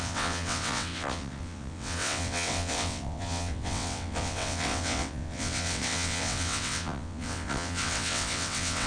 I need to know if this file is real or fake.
fake